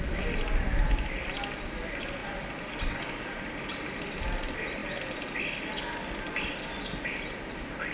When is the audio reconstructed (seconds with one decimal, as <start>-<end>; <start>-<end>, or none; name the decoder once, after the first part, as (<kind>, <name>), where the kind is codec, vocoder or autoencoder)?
none

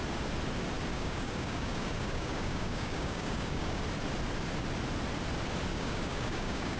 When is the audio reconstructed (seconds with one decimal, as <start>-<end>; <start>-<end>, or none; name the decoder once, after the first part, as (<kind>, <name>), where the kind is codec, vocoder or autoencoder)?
0.9-3.8 (codec, DAC); 5.7-6.8